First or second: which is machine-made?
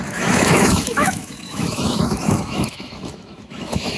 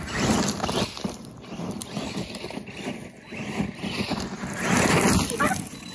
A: first